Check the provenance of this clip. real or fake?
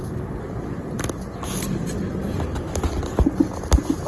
real